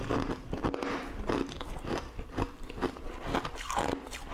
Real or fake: real